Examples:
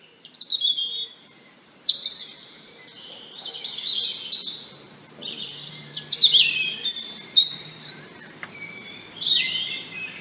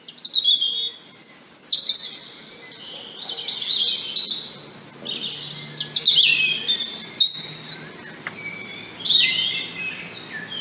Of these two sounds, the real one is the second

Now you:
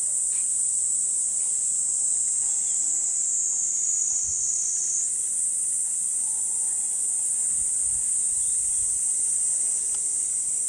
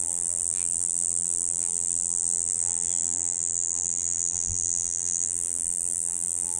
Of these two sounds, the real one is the first